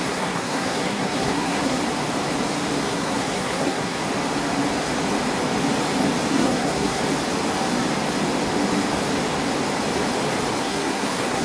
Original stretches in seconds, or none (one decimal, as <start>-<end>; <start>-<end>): 1.8-2.8; 4.0-6.3; 7.0-10.6

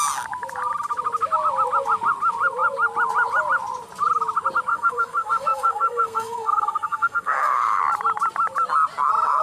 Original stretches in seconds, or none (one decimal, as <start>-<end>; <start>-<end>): 0.0-4.7; 7.8-9.4